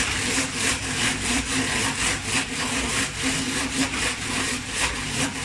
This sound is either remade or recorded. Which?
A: recorded